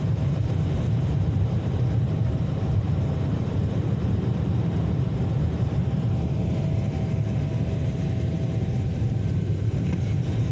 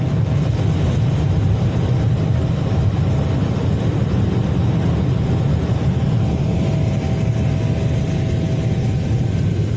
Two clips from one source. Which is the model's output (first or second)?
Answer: first